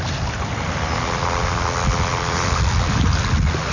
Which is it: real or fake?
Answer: real